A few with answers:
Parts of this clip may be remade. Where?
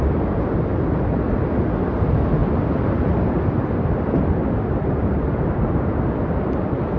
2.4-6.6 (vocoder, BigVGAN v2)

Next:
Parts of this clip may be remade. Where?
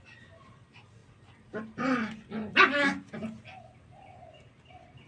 none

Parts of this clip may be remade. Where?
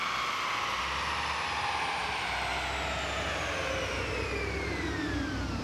none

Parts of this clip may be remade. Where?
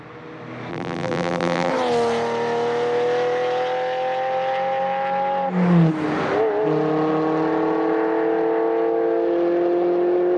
0.7-1.7 (vocoder, BigVGAN v2)